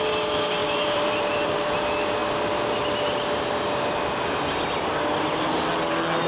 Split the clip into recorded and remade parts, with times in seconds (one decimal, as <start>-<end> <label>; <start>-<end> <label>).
0.0-0.6 recorded; 0.6-1.8 remade; 1.8-6.3 recorded